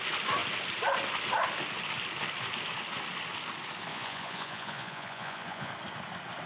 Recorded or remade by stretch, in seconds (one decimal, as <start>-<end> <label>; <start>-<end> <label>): 0.0-3.9 recorded; 3.9-5.7 remade; 5.7-6.5 recorded